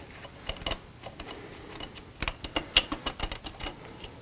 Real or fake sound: real